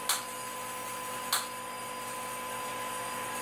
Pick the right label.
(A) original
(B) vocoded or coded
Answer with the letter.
A